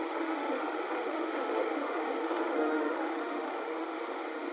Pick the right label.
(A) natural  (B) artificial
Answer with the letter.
B